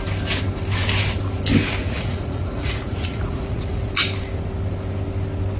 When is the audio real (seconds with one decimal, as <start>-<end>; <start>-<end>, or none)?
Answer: 0.0-1.8; 3.9-5.6